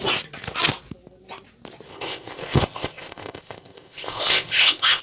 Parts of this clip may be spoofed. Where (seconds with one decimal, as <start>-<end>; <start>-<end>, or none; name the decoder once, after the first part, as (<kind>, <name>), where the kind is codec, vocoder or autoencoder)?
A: 1.9-5.0 (codec, ZipCodec)